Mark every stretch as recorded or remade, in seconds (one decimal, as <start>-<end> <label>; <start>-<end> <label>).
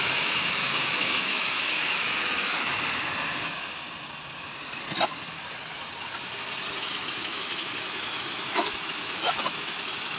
0.0-2.7 remade; 2.7-6.8 recorded; 6.8-10.2 remade